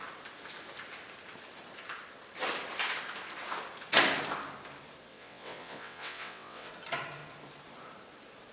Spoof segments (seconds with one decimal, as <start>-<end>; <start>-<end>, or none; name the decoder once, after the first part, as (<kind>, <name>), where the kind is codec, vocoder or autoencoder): 5.1-6.7 (vocoder, WaveNeXt)